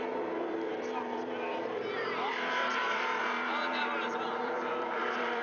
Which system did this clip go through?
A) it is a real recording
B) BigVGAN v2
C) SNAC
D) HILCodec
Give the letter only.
B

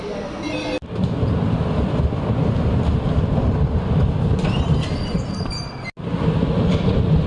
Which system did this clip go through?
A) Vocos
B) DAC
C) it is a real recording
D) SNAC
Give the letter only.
C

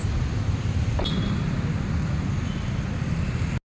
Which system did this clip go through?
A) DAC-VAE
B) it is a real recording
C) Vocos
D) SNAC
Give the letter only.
B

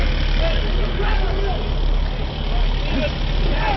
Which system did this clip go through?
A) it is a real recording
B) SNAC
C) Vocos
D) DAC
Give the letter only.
A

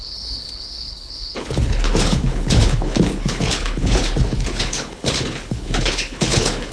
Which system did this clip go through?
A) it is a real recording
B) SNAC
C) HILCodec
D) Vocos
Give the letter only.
C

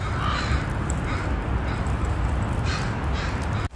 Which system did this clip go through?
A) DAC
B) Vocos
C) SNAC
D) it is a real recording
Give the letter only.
D